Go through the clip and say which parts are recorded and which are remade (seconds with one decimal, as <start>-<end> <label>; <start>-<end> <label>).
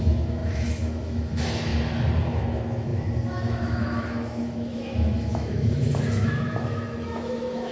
0.0-1.7 remade; 1.7-2.3 recorded; 2.3-7.7 remade